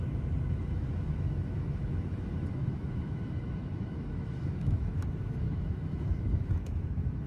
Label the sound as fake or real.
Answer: fake